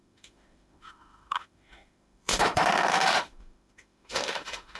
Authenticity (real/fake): fake